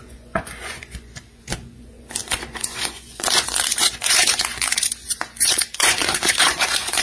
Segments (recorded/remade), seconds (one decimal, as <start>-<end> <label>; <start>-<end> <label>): 0.0-7.0 remade